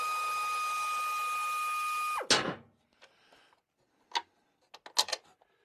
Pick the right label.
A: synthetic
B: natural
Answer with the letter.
B